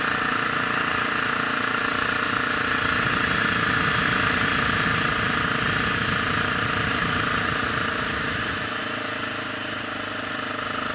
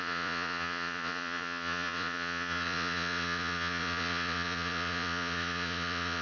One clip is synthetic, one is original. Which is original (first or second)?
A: first